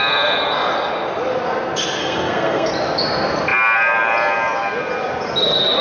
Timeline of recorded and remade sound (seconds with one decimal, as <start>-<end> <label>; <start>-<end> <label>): 0.0-2.0 recorded; 2.0-2.7 remade; 2.7-5.8 recorded